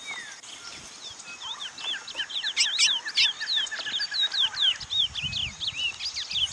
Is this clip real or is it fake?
real